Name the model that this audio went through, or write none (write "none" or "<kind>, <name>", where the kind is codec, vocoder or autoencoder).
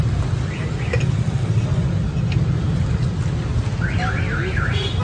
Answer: none